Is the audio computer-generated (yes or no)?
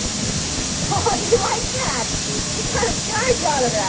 no